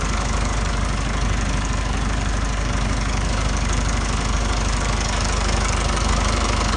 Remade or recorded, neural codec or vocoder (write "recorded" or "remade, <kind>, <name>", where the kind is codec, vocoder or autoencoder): remade, codec, DAC